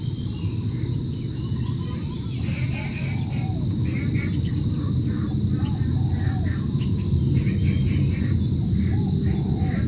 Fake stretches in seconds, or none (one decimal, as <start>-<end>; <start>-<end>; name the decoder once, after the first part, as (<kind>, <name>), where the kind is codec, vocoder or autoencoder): none